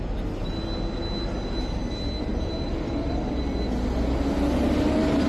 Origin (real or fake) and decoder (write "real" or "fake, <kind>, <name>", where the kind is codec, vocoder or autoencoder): real